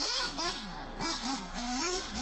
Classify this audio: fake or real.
fake